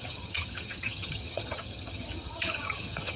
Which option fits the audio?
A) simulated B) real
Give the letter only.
A